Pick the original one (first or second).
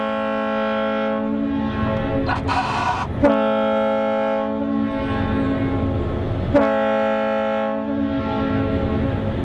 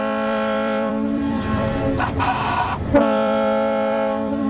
first